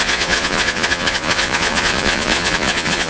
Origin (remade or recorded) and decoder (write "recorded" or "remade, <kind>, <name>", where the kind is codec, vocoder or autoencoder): remade, vocoder, Vocos